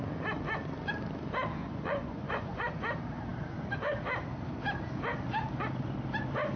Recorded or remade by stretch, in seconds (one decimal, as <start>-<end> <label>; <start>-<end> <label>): 0.0-1.6 recorded; 1.6-2.8 remade; 2.8-6.6 recorded